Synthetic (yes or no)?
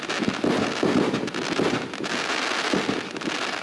no